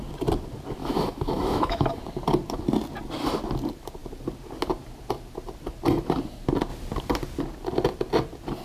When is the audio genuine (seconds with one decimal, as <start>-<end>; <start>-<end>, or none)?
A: 0.0-0.8; 2.0-8.6